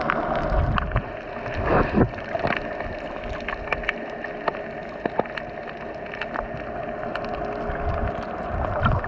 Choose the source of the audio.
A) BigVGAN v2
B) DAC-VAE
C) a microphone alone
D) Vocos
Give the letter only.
C